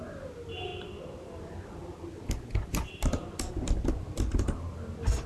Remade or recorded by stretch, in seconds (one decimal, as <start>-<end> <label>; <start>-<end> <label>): 0.0-5.3 recorded